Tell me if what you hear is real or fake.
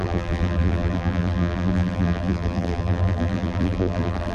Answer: fake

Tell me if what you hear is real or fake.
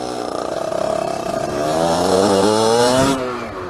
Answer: fake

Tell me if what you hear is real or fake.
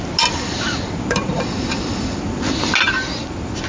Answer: real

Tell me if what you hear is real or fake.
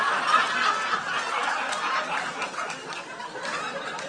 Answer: real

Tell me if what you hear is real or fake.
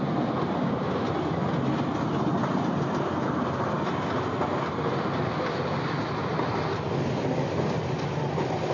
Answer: real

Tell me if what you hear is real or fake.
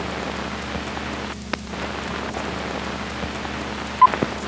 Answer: real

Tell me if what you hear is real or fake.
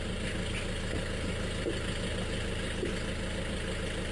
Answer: real